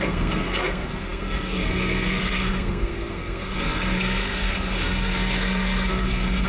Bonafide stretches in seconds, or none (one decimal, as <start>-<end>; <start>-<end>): none